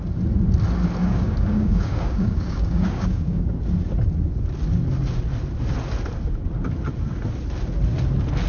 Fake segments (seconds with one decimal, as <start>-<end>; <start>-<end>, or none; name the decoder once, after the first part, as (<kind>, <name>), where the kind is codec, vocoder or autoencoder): 1.0-3.4 (codec, DAC)